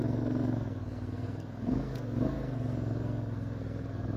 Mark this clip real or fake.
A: fake